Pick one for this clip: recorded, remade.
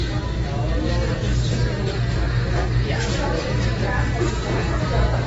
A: recorded